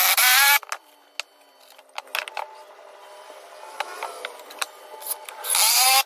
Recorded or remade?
recorded